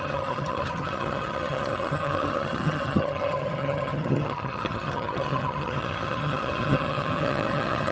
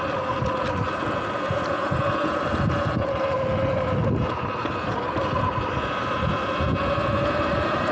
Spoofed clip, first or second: first